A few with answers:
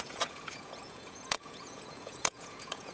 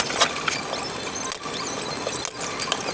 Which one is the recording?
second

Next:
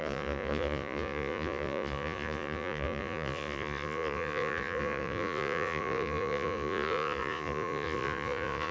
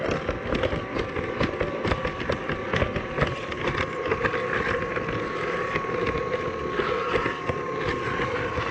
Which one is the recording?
second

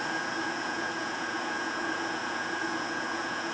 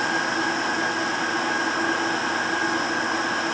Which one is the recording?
second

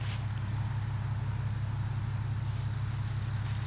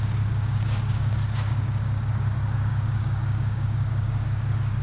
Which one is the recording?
first